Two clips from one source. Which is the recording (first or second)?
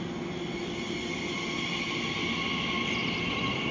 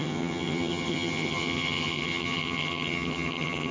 first